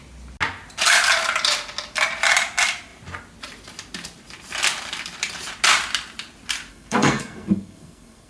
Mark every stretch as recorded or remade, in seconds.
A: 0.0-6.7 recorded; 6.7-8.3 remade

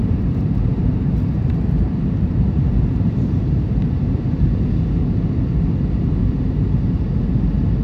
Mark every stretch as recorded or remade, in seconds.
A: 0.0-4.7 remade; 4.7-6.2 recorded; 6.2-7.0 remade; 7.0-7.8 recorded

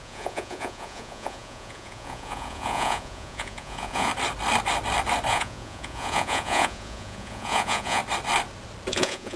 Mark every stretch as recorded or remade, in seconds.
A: 0.0-4.1 remade; 4.1-5.3 recorded; 5.3-8.0 remade; 8.0-8.9 recorded; 8.9-9.4 remade

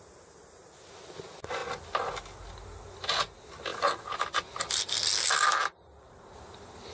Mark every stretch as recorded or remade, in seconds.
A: 0.0-6.9 recorded